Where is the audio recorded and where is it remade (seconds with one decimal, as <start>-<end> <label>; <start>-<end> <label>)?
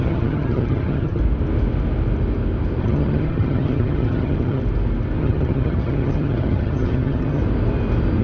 0.0-1.2 remade; 1.2-2.8 recorded; 2.8-4.6 remade; 4.6-5.2 recorded; 5.2-7.4 remade; 7.4-8.2 recorded